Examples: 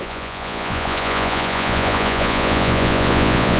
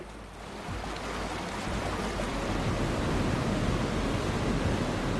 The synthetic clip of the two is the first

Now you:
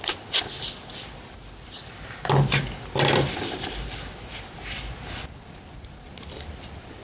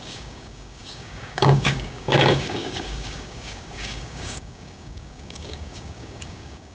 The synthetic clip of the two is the second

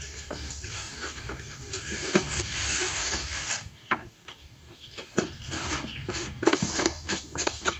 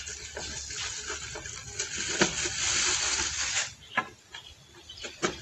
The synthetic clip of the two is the first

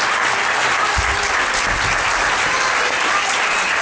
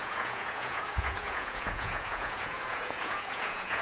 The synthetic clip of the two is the second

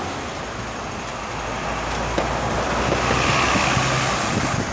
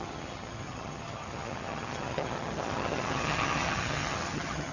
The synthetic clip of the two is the second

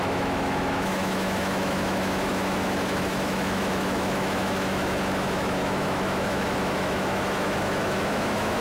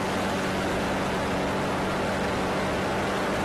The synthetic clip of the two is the first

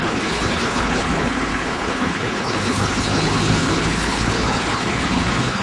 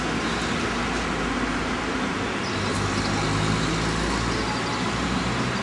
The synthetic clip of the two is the first